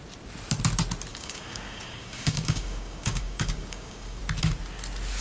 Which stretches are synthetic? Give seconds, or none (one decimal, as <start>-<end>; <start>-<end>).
1.1-4.2